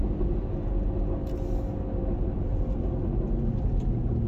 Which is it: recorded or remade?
recorded